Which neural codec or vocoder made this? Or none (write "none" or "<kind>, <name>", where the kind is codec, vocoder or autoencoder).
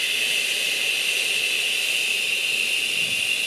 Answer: none